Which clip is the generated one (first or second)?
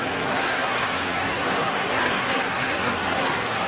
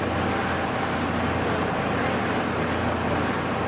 first